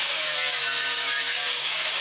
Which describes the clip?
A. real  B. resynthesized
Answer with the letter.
B